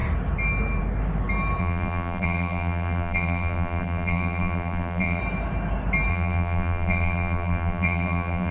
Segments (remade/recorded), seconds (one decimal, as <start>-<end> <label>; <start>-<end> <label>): 0.0-1.6 recorded; 1.6-5.2 remade; 5.2-6.1 recorded; 6.1-8.5 remade